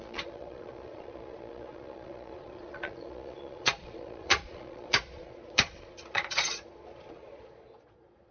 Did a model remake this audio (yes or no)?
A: yes